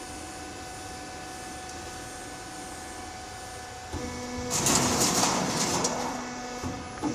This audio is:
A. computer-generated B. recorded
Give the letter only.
B